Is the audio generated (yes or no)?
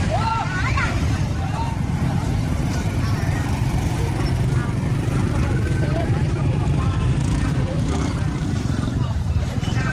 yes